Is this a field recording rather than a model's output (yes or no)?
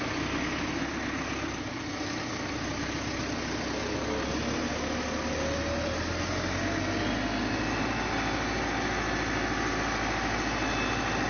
yes